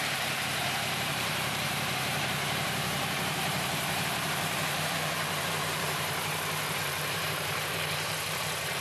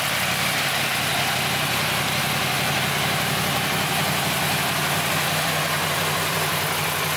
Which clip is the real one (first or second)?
second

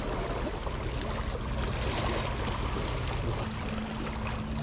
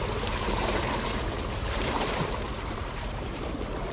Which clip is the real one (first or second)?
first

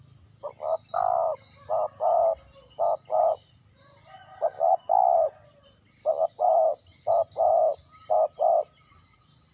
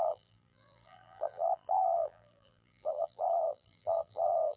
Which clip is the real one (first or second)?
first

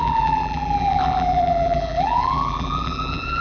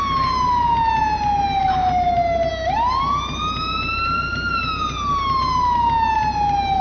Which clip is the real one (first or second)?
second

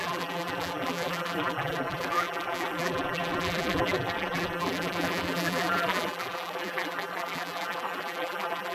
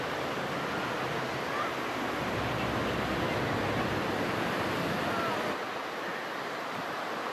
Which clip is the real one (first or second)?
second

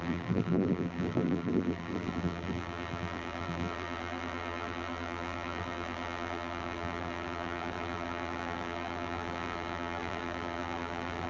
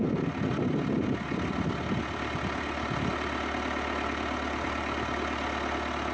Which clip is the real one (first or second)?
second